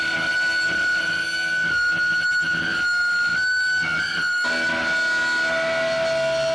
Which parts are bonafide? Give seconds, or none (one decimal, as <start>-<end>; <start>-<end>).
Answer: 0.0-6.5